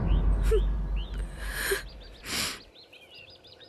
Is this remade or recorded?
recorded